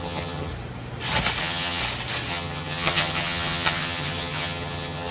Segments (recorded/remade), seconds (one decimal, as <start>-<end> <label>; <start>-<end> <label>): 0.0-0.5 remade; 0.5-1.4 recorded; 1.4-1.8 remade; 1.8-2.3 recorded; 2.3-5.1 remade